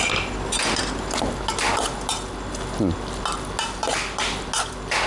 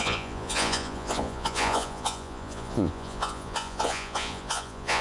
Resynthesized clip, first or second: second